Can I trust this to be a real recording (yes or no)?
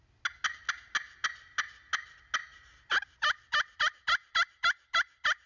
yes